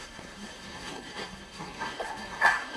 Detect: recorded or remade remade